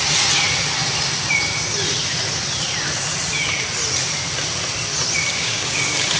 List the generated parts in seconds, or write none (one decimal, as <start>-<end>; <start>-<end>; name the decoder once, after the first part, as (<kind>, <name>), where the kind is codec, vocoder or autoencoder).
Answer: 5.3-5.8 (codec, DAC)